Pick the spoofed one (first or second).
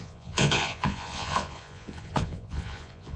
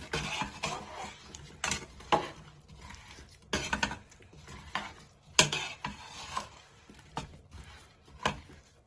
first